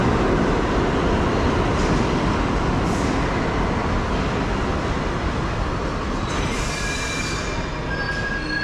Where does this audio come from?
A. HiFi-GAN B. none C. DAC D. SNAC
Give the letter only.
B